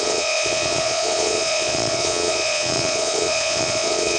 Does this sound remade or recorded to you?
remade